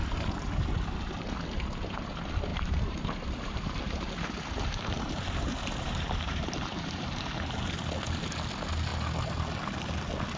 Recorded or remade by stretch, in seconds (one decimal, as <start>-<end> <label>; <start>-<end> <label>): 0.0-2.5 recorded; 2.5-7.6 remade; 7.6-10.4 recorded